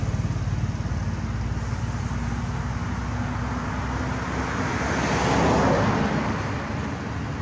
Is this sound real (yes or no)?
yes